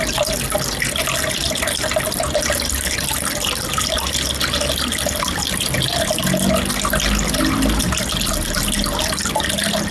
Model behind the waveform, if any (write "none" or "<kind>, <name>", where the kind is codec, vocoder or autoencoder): none